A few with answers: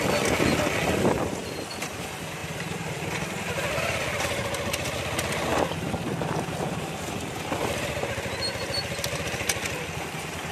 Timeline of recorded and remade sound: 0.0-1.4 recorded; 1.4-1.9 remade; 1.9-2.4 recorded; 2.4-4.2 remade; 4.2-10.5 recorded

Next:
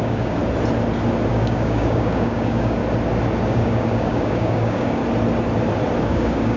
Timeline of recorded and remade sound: 0.0-0.4 remade; 0.4-1.3 recorded; 1.3-2.8 remade; 2.8-3.5 recorded; 3.5-5.0 remade; 5.0-6.0 recorded; 6.0-6.6 remade

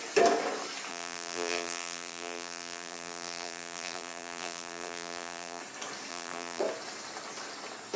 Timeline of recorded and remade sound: 0.0-0.9 recorded; 0.9-5.6 remade; 5.6-6.1 recorded; 6.1-6.6 remade; 6.6-8.0 recorded

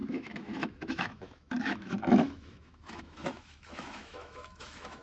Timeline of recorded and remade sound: 0.0-5.0 remade

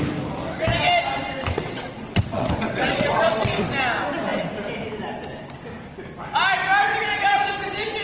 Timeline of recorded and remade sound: 0.0-1.4 recorded; 1.4-3.6 remade; 3.6-8.0 recorded

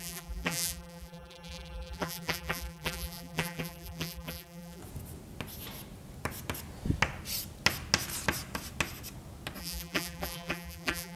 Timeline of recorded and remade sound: 0.0-4.8 remade; 4.8-9.6 recorded; 9.6-11.2 remade